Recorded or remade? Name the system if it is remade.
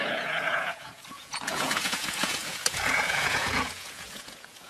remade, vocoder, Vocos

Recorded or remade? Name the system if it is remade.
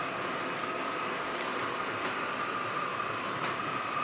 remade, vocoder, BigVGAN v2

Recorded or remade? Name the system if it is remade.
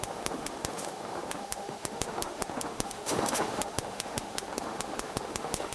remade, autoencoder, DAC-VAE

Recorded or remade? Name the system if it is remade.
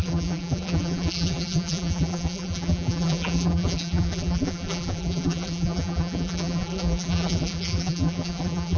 remade, vocoder, BigVGAN v2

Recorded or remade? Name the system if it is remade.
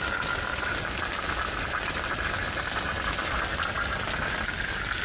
recorded